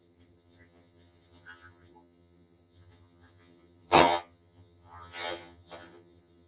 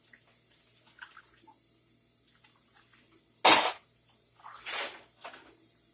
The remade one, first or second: first